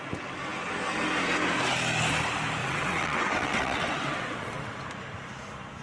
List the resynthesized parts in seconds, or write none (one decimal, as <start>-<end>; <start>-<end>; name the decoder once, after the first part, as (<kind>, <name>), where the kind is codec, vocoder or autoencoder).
2.6-4.8 (vocoder, WaveNeXt)